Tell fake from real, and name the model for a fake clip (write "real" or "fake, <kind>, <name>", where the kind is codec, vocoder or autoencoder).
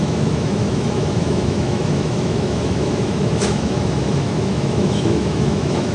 fake, autoencoder, DAC-VAE